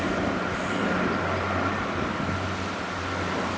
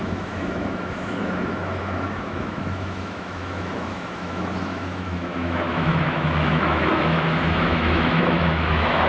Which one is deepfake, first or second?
second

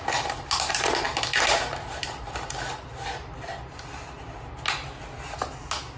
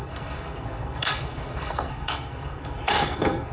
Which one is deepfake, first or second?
second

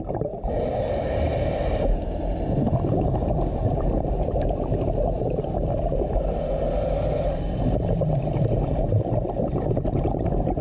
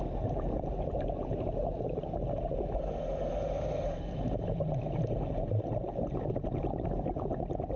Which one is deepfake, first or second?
first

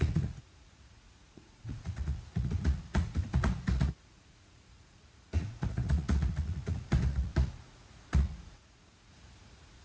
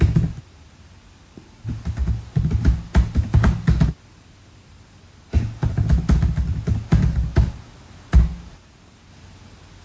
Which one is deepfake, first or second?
first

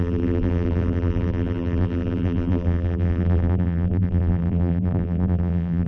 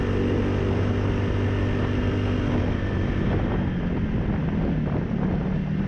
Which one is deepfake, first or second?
first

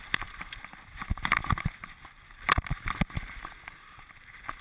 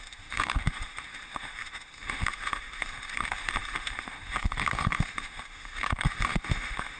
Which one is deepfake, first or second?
second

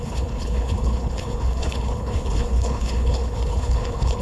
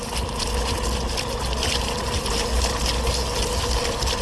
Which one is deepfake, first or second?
first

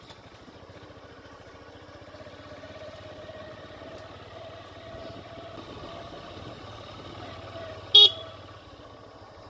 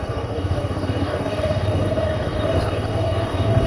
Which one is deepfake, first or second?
second